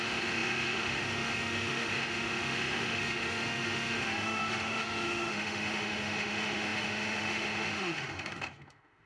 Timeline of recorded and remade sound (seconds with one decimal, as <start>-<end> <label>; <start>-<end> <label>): 0.0-9.1 remade